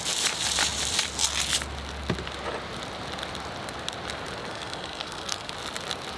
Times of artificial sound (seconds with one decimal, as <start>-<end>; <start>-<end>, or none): 4.4-5.5